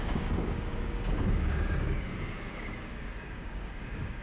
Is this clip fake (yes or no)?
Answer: yes